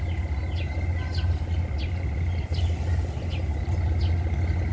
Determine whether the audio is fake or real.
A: real